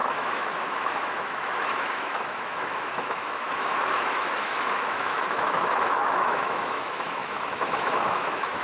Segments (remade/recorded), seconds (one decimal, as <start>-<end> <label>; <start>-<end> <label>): 0.0-8.6 remade